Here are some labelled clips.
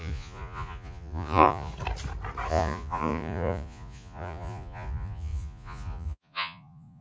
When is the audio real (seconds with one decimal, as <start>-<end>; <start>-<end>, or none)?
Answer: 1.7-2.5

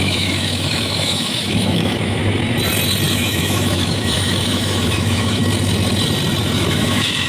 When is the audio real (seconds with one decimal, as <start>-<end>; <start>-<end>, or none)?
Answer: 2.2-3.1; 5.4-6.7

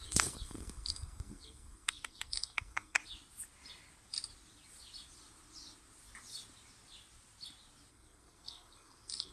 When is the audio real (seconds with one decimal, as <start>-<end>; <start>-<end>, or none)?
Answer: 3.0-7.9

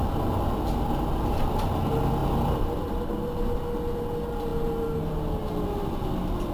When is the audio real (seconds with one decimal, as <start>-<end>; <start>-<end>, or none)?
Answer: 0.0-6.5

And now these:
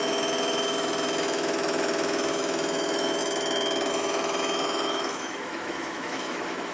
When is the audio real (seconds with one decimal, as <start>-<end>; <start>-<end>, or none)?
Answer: 3.2-3.9